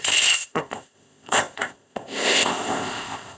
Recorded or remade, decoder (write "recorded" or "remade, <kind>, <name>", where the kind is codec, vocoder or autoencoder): remade, codec, ZipCodec